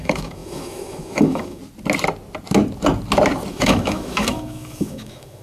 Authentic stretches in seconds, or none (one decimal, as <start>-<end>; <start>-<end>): 1.6-3.5